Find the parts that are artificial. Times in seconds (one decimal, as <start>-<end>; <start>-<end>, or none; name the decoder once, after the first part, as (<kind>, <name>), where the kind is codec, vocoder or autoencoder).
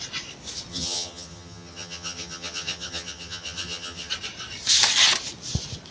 0.7-4.1 (vocoder, HiFi-GAN)